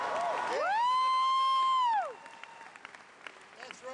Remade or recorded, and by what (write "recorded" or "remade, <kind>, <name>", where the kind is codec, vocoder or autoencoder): recorded